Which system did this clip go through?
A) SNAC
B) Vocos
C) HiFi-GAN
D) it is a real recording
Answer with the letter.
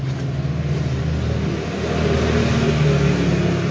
D